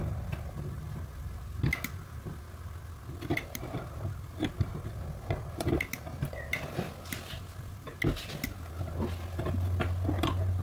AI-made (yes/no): no